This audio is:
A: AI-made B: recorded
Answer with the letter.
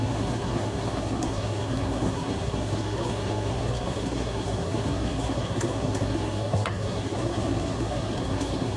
A